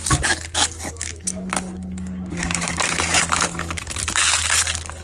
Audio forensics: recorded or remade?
remade